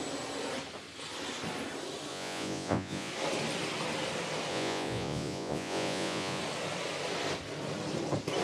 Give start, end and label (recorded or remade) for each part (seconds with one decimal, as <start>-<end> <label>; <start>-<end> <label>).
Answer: 0.0-2.1 recorded; 2.1-3.1 remade; 3.1-4.5 recorded; 4.5-6.4 remade; 6.4-8.4 recorded